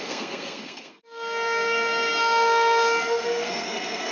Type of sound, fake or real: fake